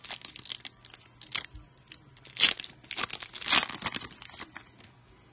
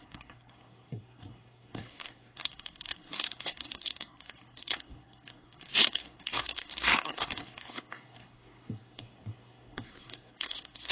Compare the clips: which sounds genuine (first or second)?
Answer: first